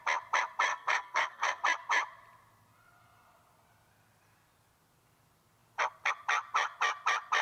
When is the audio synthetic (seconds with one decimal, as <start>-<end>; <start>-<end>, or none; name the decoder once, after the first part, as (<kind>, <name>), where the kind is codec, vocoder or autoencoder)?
0.7-1.6 (codec, SNAC)

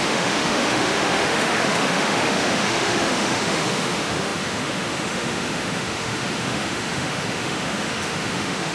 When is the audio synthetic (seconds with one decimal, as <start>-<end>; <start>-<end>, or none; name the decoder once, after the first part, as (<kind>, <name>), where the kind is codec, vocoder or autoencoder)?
0.0-8.7 (autoencoder, DAC-VAE)

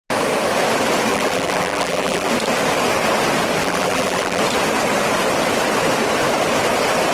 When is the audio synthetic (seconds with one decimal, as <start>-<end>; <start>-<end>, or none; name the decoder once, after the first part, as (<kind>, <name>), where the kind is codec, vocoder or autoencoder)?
1.1-2.3 (vocoder, BigVGAN v2); 3.6-4.4

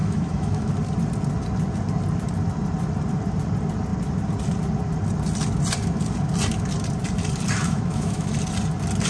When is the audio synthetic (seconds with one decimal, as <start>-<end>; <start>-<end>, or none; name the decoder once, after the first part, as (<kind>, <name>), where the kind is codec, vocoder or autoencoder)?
0.0-0.7 (autoencoder, DAC-VAE); 7.6-8.3

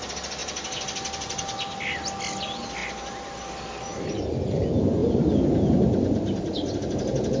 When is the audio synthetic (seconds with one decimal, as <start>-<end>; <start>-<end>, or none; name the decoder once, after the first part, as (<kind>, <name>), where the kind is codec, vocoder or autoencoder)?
none